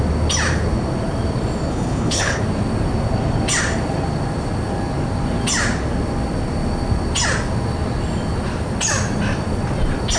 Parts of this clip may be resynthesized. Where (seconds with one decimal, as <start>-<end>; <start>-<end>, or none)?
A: 1.7-2.4